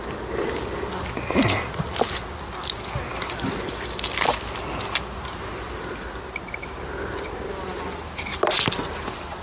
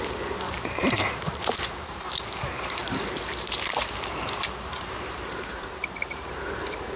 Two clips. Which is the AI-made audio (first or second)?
second